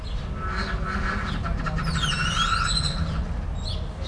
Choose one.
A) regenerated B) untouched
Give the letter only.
B